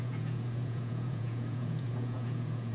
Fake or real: fake